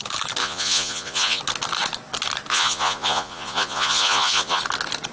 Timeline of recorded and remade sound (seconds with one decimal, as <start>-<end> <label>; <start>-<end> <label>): 0.0-0.4 recorded; 0.4-1.4 remade; 1.4-2.5 recorded; 2.5-4.6 remade; 4.6-5.1 recorded